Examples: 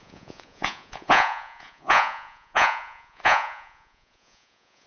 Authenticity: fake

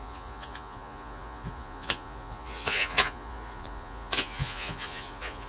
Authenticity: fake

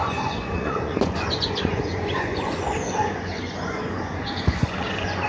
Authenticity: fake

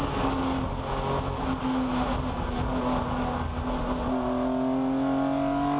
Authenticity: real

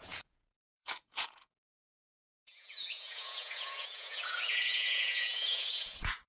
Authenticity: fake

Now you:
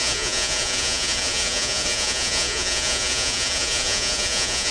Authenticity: fake